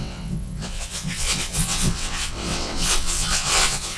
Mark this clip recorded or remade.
remade